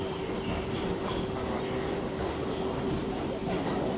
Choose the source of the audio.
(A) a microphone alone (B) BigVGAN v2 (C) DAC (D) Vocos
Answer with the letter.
A